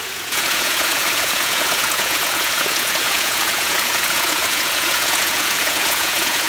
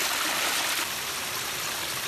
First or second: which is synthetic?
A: first